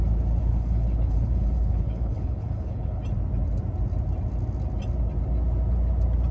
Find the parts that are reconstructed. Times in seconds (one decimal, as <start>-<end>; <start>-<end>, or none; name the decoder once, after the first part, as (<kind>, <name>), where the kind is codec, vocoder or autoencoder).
0.4-3.0 (codec, HILCodec)